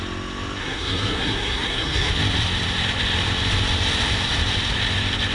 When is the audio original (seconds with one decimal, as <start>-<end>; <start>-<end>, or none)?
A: 0.0-0.6; 2.1-5.3